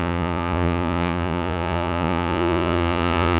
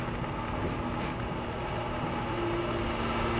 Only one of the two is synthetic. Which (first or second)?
first